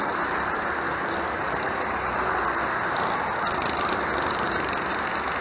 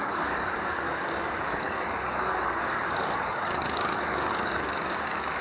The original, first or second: first